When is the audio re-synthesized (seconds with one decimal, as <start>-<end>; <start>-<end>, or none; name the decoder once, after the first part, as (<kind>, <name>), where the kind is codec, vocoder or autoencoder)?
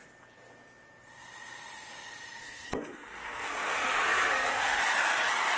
2.4-4.8 (codec, SNAC)